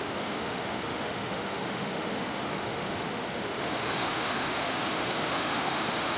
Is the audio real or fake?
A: fake